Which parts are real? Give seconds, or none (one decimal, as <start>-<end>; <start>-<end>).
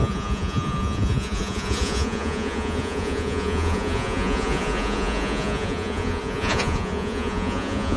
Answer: none